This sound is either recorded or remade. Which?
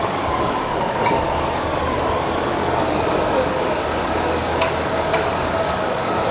remade